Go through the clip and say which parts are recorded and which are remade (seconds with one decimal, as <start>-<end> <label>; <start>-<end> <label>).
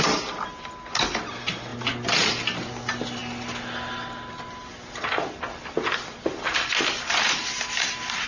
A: 0.0-8.3 recorded